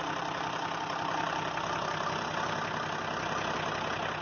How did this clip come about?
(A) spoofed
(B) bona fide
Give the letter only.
B